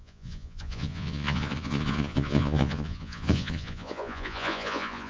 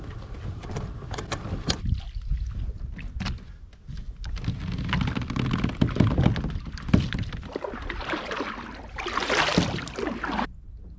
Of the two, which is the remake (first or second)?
first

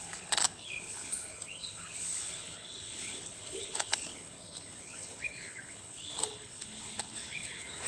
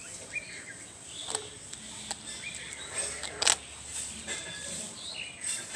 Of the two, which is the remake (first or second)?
first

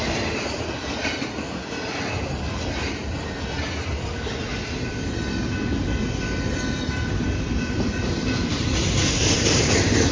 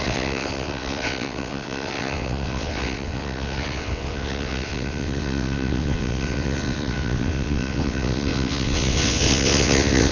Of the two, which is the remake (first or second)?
second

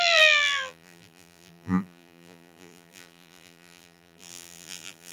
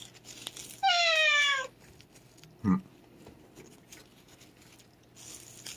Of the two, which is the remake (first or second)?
first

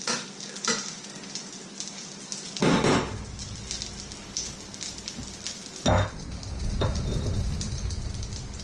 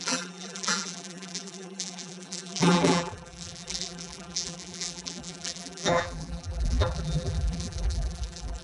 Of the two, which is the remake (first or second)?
second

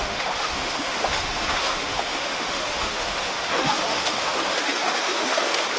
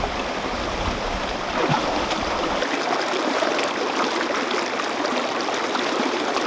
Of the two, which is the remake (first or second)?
first